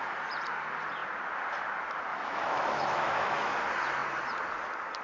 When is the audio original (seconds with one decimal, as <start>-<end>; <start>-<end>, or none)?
0.0-2.1; 3.6-5.0

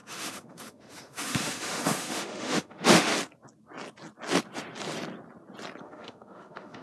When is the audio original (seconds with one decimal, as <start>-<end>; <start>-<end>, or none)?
3.1-5.8